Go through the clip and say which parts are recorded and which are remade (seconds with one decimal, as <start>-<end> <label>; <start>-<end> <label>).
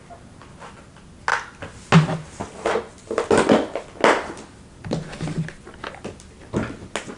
0.0-7.2 recorded